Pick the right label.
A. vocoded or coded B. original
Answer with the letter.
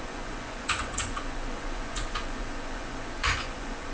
A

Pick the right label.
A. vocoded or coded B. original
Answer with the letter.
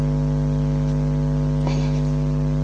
B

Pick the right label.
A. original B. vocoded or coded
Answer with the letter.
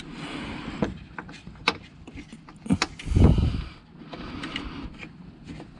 A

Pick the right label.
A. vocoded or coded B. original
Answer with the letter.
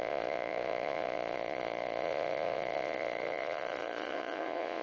A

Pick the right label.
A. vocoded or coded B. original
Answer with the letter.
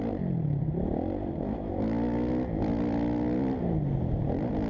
B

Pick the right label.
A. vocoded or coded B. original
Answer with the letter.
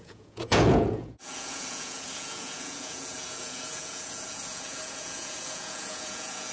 A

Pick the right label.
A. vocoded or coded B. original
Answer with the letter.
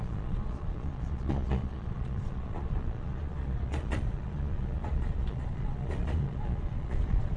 A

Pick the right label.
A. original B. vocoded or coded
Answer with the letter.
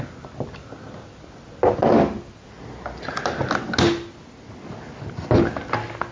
A